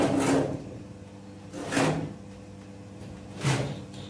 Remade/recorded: recorded